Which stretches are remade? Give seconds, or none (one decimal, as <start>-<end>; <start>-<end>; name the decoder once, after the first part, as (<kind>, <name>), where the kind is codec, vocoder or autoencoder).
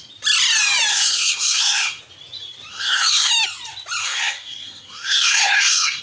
0.9-2.0 (codec, SNAC); 2.7-3.3; 4.0-6.0